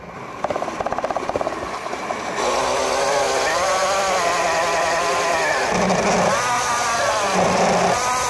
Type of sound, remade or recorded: recorded